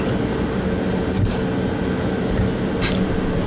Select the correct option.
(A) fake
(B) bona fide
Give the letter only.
B